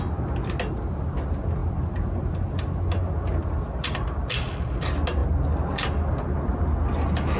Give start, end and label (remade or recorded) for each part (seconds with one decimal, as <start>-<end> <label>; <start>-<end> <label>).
0.0-7.4 recorded